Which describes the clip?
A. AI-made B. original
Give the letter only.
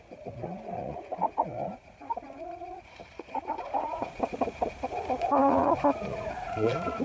A